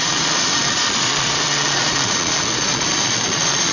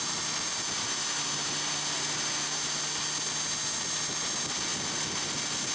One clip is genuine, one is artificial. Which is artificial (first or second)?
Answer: first